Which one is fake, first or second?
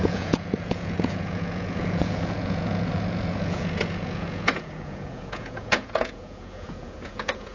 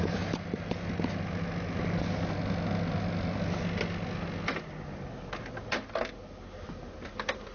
first